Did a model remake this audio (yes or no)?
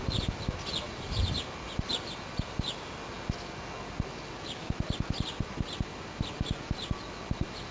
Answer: no